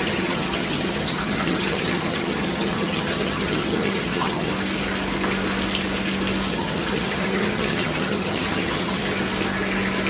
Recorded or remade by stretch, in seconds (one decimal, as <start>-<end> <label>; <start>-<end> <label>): 0.0-4.5 remade; 4.5-6.5 recorded; 6.5-9.0 remade; 9.0-10.1 recorded

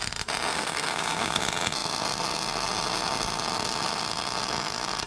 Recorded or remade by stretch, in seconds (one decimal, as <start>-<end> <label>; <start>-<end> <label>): 0.0-0.5 recorded; 0.5-1.4 remade; 1.4-5.1 recorded

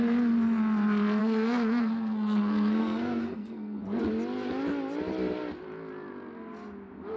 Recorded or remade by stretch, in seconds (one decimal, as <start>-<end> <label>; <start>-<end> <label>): 0.0-1.2 recorded; 1.2-4.0 remade; 4.0-7.2 recorded

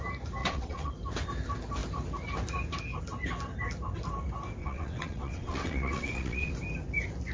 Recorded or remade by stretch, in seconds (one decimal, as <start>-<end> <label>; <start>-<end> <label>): 0.0-0.4 recorded; 0.4-0.9 remade; 0.9-4.6 recorded; 4.6-6.5 remade; 6.5-7.3 recorded

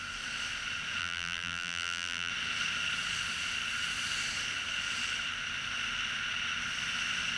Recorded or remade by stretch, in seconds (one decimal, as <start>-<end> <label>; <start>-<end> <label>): 0.0-1.0 recorded; 1.0-2.3 remade; 2.3-7.4 recorded

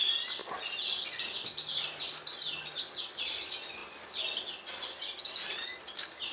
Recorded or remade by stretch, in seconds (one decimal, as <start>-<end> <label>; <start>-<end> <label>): 0.0-6.3 recorded